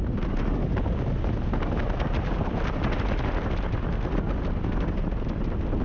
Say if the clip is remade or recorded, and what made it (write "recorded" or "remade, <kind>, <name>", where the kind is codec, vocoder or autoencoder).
recorded